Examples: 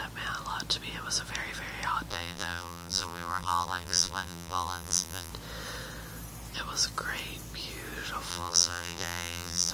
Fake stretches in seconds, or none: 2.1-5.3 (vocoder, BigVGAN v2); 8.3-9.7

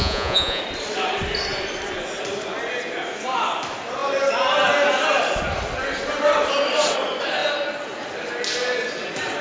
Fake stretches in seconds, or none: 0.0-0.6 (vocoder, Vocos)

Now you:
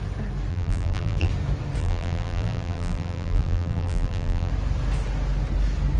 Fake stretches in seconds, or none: 0.5-1.3 (vocoder, BigVGAN v2); 1.8-4.5